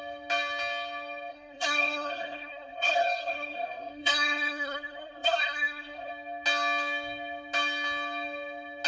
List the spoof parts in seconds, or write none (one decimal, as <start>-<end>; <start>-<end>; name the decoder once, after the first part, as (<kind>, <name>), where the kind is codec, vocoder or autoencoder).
1.3-6.1 (codec, SNAC)